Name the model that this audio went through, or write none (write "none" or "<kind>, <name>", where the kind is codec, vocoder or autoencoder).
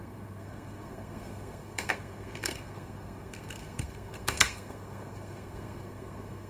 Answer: codec, SNAC